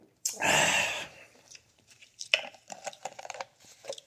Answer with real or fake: fake